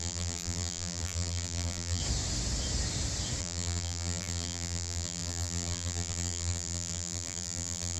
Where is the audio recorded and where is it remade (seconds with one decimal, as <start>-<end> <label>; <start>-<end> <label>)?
0.0-2.0 remade; 2.0-3.4 recorded; 3.4-8.0 remade